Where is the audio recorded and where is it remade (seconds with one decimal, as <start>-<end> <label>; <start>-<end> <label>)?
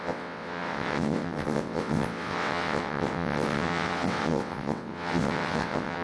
0.0-6.0 remade